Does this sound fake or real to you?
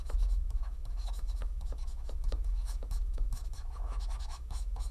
fake